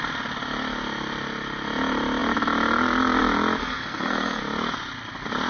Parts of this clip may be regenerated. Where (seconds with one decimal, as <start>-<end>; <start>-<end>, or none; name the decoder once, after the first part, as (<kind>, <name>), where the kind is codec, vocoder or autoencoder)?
3.6-4.4 (codec, SNAC)